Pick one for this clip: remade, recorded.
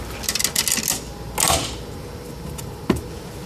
recorded